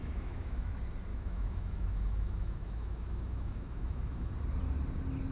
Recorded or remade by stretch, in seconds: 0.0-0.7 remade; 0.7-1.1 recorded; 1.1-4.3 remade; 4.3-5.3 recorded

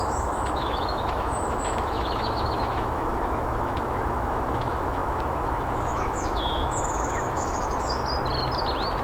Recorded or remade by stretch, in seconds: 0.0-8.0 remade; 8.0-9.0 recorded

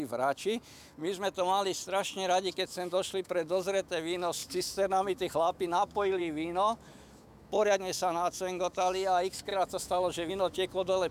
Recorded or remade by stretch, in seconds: 0.0-1.0 remade; 1.0-2.5 recorded; 2.5-11.1 remade

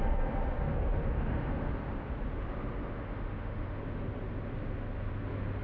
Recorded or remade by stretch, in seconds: 0.0-0.7 recorded; 0.7-1.7 remade; 1.7-2.8 recorded; 2.8-3.8 remade; 3.8-5.6 recorded

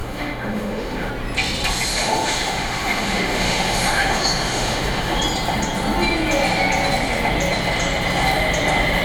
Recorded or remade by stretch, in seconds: 0.0-1.1 remade; 1.1-1.9 recorded; 1.9-5.2 remade; 5.2-9.0 recorded

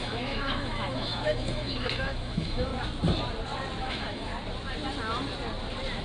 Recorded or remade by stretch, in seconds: 0.0-2.7 remade; 2.7-3.8 recorded; 3.8-4.3 remade; 4.3-6.0 recorded

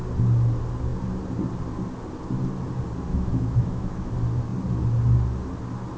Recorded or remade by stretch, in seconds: 0.0-3.1 recorded; 3.1-4.1 remade; 4.1-6.0 recorded